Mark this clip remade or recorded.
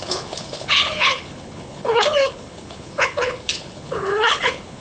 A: remade